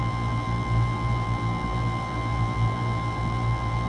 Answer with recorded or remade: remade